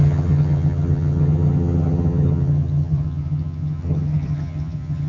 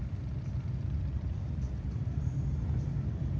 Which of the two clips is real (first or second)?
second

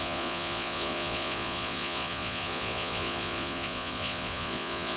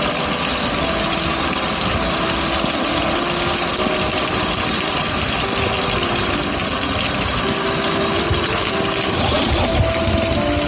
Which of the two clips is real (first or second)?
second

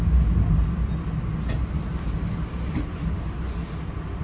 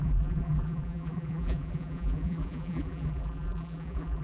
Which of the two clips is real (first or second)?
first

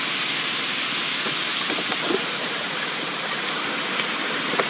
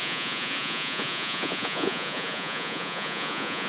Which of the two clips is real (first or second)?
first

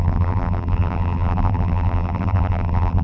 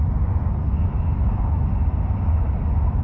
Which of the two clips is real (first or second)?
second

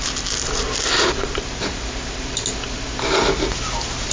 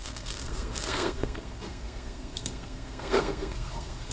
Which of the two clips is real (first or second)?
first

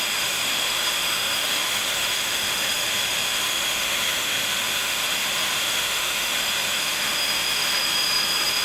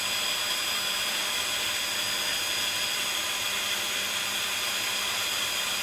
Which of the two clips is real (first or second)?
second